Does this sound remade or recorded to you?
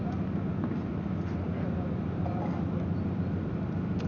recorded